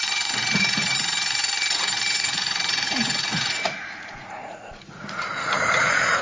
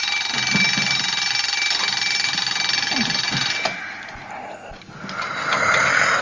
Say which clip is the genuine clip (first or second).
second